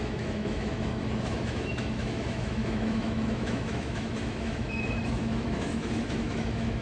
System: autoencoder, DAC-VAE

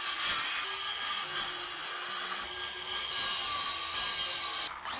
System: none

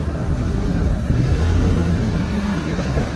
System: codec, SNAC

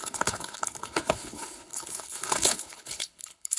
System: codec, HILCodec